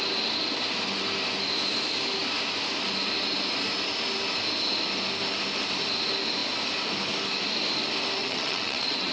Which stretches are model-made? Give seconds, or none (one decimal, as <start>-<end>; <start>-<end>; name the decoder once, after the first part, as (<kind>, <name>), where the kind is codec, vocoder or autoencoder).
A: 8.2-9.1 (vocoder, WaveNeXt)